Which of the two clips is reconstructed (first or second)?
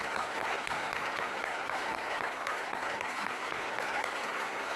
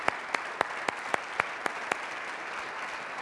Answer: first